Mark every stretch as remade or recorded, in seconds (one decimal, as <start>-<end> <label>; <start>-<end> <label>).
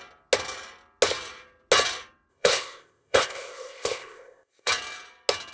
0.0-2.3 recorded; 2.3-4.7 remade; 4.7-5.5 recorded